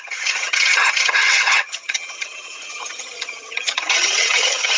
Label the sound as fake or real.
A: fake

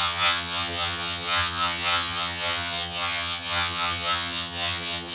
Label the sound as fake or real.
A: fake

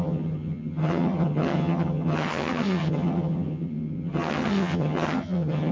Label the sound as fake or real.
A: fake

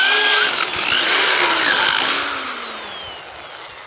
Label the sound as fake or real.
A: real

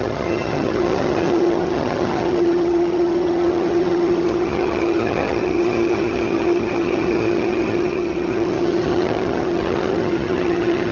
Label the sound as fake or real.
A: fake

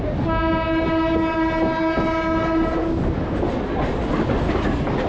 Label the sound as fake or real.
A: real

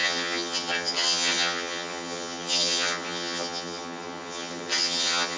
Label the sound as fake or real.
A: fake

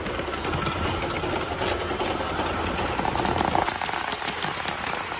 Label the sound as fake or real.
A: real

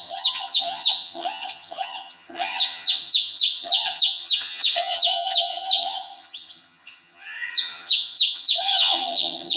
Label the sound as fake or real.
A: fake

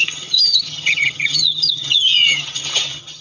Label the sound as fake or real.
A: fake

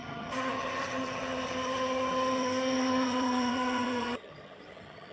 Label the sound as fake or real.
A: fake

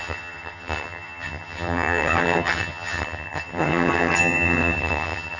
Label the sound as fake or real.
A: fake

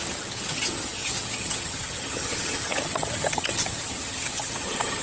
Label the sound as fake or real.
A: fake